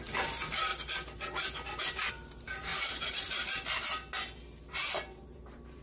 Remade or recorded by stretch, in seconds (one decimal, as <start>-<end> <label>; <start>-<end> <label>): 0.0-0.7 remade; 0.7-2.1 recorded; 2.1-2.7 remade; 2.7-4.7 recorded; 4.7-5.8 remade

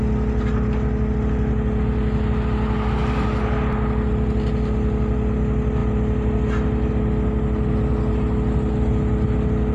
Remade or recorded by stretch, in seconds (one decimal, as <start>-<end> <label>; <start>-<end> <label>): 0.0-9.7 recorded